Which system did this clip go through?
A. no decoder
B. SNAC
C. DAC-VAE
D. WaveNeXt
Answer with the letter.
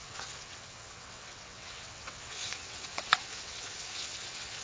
D